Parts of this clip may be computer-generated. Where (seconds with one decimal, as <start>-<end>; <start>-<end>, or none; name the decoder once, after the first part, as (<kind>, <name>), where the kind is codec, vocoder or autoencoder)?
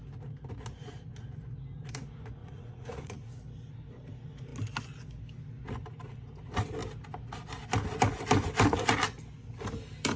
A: 2.4-3.3 (vocoder, Vocos)